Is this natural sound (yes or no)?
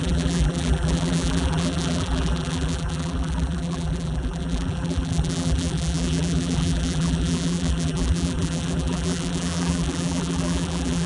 no